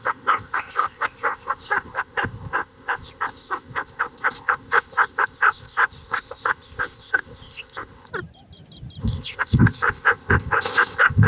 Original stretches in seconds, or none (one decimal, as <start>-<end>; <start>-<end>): 8.1-9.0